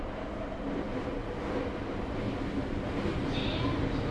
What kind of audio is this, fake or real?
real